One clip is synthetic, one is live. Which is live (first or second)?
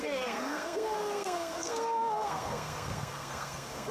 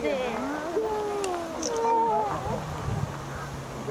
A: second